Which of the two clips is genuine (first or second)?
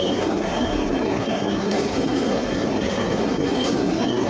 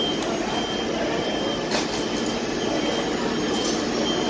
second